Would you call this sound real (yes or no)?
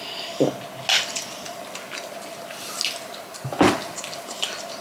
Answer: yes